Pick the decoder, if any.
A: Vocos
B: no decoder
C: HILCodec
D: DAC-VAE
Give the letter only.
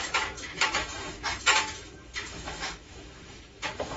D